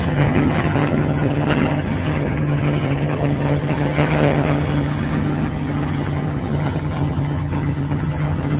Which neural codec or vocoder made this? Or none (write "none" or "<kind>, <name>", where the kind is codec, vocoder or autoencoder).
vocoder, HiFi-GAN